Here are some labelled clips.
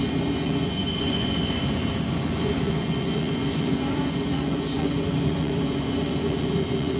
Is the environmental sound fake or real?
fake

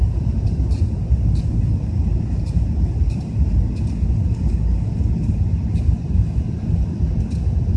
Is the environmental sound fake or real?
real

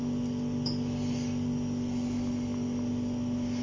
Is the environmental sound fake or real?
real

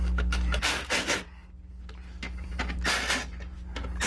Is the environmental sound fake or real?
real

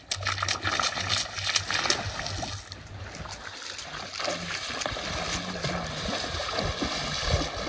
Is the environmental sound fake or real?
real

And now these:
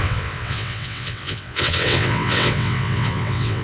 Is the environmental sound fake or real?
fake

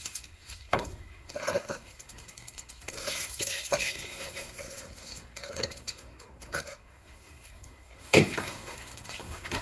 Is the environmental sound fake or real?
fake